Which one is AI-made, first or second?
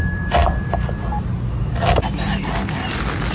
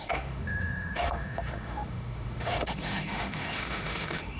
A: second